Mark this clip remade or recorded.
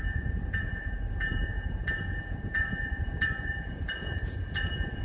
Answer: remade